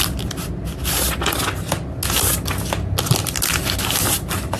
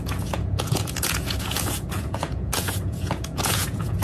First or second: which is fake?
second